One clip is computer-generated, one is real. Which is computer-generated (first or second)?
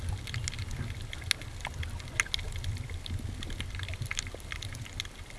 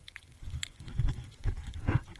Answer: second